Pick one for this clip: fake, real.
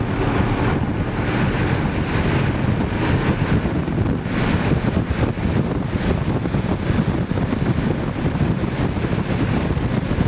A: real